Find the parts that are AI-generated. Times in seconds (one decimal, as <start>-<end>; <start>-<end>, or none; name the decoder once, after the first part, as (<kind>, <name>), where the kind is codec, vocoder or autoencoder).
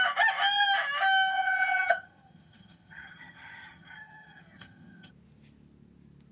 1.3-5.1 (vocoder, HiFi-GAN)